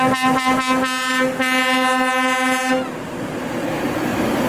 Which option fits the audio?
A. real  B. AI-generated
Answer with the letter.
A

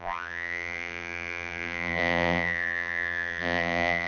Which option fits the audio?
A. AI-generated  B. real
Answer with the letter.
A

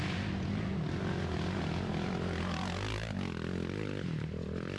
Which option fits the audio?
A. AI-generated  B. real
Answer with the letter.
B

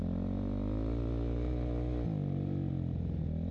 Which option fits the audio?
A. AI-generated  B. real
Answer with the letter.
B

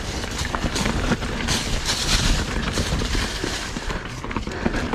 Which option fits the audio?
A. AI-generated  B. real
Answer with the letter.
A